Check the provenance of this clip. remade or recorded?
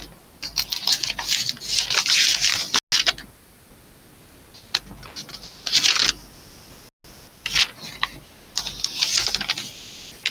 recorded